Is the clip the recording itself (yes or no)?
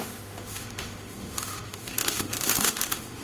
no